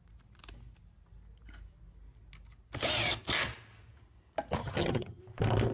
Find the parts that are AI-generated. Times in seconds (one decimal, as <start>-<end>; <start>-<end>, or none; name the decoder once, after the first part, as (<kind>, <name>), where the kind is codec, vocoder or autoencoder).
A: 4.6-5.2 (vocoder, HiFi-GAN)